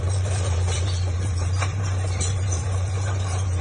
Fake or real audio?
fake